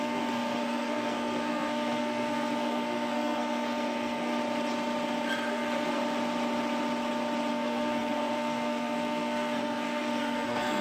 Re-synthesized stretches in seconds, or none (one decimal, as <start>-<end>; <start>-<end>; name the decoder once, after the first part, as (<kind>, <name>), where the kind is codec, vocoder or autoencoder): 0.0-4.4 (codec, SNAC); 5.5-6.0; 7.5-10.8